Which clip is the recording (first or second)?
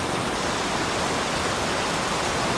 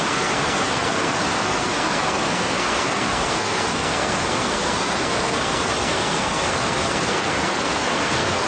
first